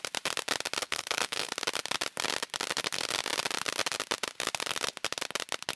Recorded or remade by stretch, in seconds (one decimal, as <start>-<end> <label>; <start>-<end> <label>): 0.0-0.8 recorded; 0.8-1.5 remade; 1.5-5.8 recorded